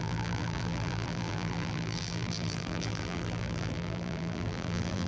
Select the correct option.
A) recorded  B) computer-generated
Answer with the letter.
B